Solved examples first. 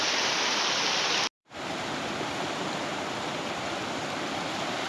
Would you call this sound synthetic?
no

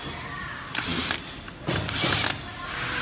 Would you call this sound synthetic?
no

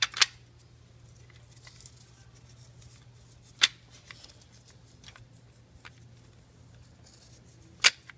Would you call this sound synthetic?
no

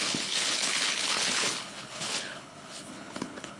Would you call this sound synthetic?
yes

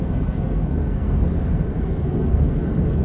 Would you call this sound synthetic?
yes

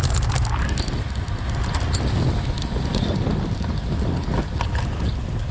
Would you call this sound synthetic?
no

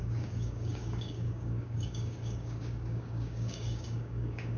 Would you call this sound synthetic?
yes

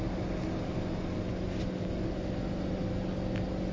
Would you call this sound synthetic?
no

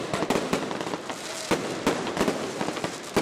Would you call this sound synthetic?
no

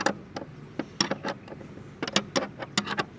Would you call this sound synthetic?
no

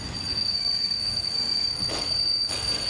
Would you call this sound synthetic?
yes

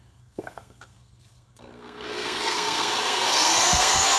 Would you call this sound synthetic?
yes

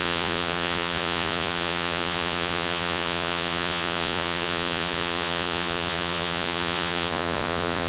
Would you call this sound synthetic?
yes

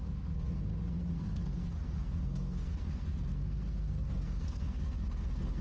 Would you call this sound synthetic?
yes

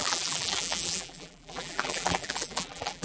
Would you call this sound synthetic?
yes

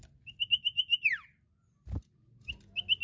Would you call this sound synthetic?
no